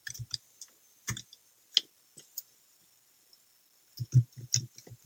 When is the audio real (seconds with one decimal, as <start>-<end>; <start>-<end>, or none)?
1.4-4.5